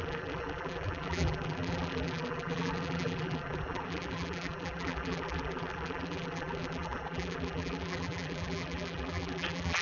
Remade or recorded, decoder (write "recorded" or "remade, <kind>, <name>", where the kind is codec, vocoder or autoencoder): remade, vocoder, BigVGAN v2